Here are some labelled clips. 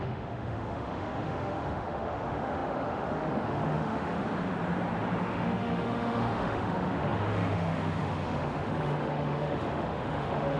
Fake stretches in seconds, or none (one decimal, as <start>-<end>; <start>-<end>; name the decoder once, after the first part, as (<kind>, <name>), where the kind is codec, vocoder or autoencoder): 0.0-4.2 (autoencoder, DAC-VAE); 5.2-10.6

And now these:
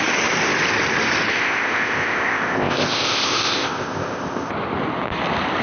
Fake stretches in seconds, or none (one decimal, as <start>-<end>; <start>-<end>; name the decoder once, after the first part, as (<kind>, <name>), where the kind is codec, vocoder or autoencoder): 1.3-4.5 (codec, ZipCodec)

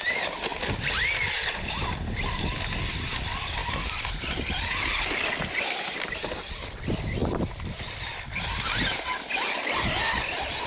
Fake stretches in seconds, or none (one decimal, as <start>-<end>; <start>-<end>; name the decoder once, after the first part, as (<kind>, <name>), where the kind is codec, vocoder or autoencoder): 0.5-1.7 (vocoder, BigVGAN v2); 3.6-4.7; 7.2-8.8

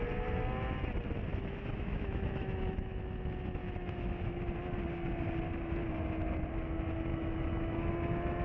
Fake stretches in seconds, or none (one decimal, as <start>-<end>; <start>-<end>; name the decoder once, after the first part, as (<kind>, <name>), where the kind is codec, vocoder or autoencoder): 1.3-3.0 (autoencoder, DAC-VAE); 3.6-4.4; 7.1-7.9

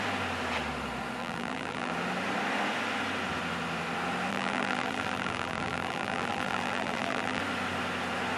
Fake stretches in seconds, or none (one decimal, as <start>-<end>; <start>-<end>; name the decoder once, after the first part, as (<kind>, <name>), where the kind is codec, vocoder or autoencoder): 1.2-1.9 (vocoder, BigVGAN v2); 4.3-7.4

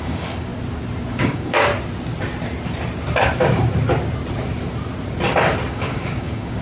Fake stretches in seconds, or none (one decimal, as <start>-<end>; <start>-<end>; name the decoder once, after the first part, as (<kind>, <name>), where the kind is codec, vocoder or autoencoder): 0.0-0.5 (codec, DAC); 1.1-1.7; 5.7-6.6

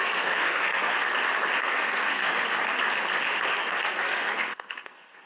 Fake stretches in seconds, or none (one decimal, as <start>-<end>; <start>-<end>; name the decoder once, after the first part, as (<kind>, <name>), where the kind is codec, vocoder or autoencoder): 0.0-1.0 (codec, SNAC); 1.6-2.3; 3.5-5.3